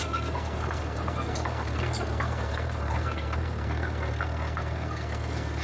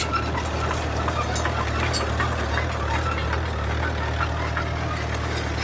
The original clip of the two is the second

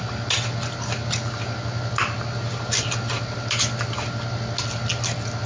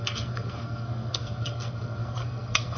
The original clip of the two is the first